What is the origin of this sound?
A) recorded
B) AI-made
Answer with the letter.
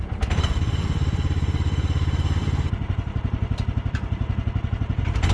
B